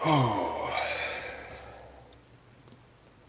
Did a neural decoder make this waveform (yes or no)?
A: no